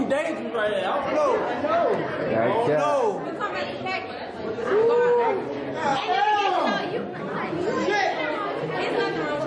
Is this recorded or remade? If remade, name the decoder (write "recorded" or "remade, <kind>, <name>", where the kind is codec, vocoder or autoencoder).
recorded